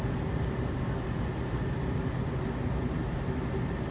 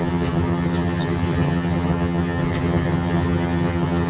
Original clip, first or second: first